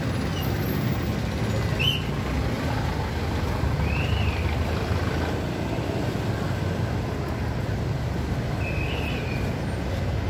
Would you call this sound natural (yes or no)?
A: yes